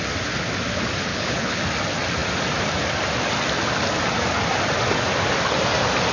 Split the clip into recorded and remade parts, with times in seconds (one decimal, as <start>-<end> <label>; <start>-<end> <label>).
0.0-1.1 recorded; 1.1-1.6 remade; 1.6-6.1 recorded